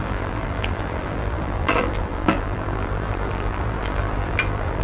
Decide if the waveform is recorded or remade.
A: remade